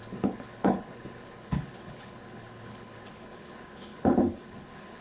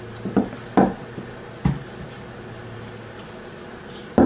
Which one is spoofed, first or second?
first